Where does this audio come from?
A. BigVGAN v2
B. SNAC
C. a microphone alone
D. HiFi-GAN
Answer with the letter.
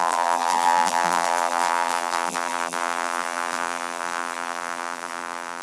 A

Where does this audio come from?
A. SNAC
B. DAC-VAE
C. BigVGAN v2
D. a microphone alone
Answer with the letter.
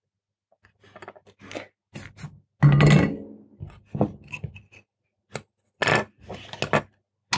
D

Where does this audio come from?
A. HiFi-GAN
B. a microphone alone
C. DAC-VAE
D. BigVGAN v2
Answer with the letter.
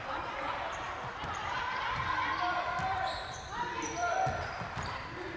D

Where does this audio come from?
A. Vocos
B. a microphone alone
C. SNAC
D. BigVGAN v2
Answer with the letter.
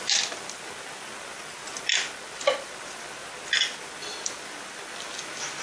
B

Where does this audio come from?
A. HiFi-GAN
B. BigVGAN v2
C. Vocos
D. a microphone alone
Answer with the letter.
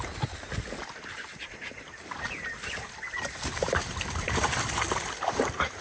B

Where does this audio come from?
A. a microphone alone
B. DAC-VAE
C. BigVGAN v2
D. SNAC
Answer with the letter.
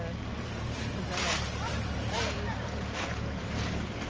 C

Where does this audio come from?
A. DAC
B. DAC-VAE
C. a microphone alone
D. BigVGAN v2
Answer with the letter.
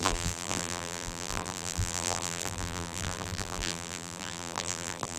D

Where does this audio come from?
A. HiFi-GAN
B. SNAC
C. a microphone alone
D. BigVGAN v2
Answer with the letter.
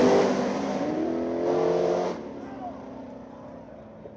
C